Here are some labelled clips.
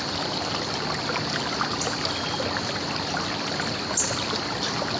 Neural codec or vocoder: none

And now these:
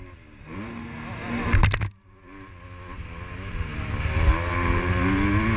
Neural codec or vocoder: none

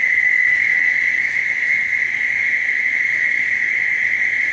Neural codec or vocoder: vocoder, Vocos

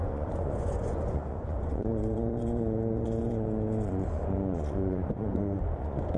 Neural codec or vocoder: vocoder, Vocos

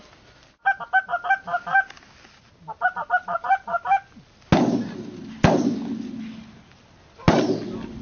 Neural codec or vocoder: none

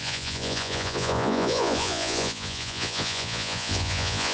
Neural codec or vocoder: vocoder, Vocos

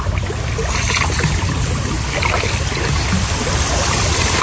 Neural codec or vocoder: none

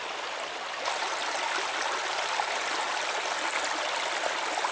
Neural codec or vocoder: none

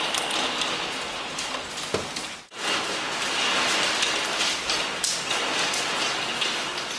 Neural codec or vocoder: none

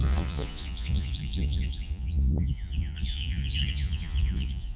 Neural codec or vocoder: vocoder, Vocos